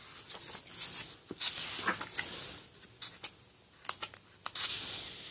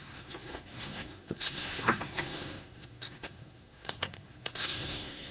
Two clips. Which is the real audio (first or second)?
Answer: first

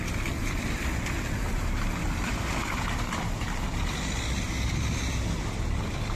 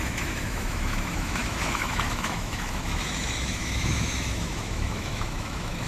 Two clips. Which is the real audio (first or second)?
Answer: first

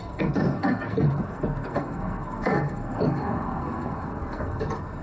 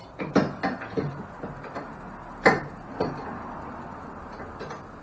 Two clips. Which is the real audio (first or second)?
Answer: second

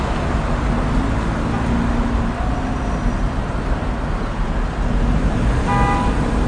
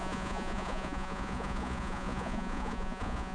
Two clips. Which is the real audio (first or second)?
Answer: first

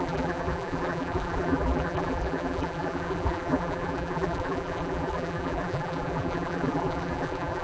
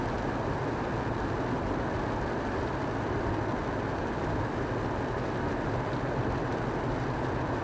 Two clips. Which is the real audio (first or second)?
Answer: second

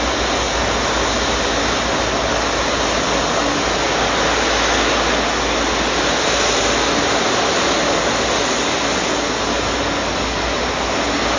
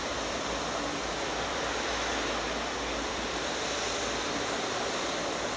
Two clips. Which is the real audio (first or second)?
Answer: first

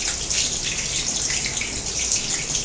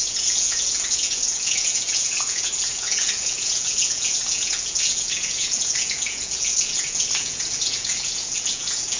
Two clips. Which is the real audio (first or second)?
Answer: first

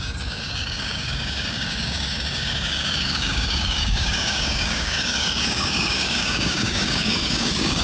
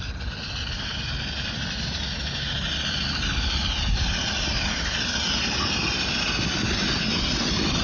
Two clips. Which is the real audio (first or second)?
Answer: second